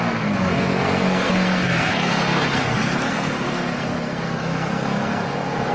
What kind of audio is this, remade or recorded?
remade